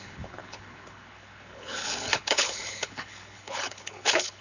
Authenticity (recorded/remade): remade